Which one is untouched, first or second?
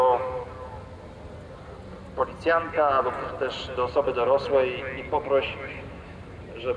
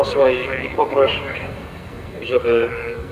first